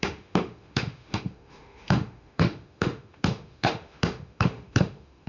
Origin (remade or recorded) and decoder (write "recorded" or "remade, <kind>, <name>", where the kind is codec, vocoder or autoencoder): remade, autoencoder, DAC-VAE